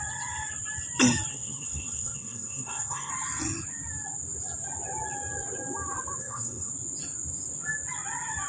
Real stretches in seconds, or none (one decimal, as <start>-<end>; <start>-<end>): 0.0-1.3; 3.1-6.2; 6.7-8.5